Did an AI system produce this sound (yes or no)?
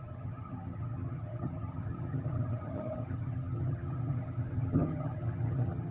yes